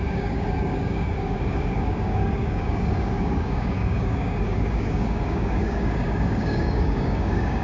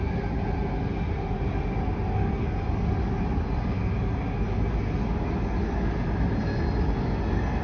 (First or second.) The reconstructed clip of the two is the first